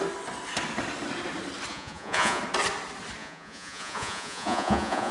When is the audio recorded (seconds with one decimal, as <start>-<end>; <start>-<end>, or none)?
0.0-1.7; 2.4-3.2